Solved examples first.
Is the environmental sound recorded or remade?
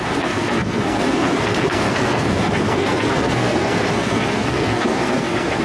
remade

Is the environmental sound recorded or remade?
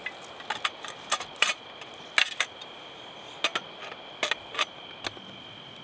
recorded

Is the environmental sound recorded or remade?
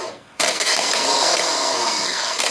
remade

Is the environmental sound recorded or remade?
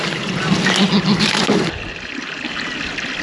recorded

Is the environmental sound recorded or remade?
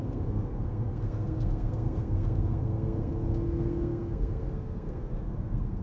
remade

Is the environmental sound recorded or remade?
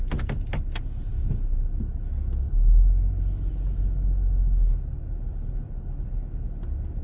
recorded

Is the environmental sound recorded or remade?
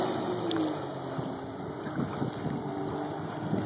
recorded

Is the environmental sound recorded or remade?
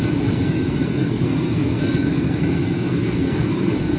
remade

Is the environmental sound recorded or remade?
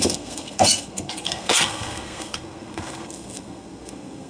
remade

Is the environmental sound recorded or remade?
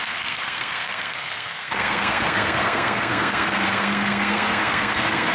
remade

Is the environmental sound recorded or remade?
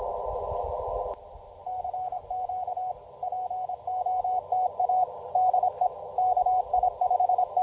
recorded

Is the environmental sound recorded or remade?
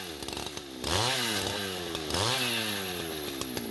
recorded